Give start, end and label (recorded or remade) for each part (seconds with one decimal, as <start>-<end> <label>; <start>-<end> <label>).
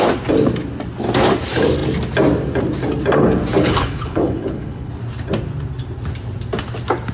0.0-3.6 recorded; 3.6-4.9 remade; 4.9-7.1 recorded